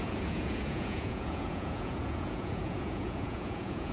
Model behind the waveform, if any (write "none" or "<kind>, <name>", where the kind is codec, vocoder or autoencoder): vocoder, Vocos